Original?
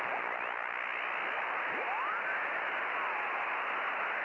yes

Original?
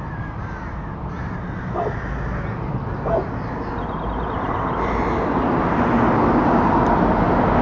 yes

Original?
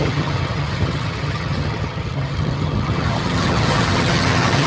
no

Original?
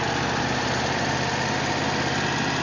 yes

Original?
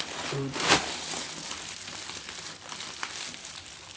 yes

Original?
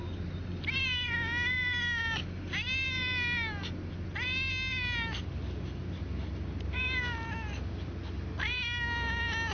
yes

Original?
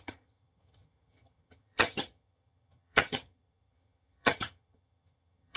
no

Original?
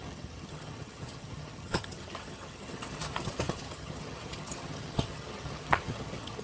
no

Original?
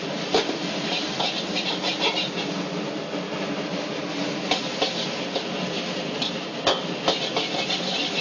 yes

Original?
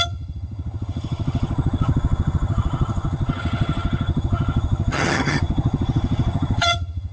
no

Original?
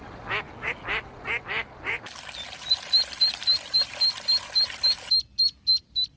yes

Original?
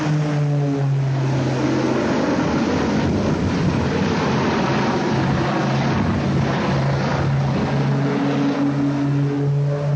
yes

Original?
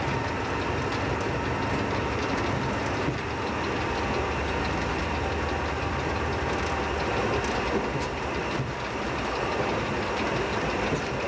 yes